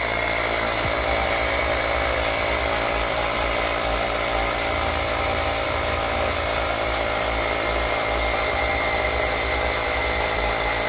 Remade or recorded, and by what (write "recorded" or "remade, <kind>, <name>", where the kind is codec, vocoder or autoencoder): remade, vocoder, BigVGAN v2